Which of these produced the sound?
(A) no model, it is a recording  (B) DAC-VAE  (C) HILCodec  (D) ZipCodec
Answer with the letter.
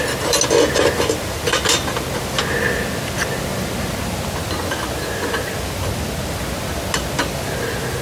A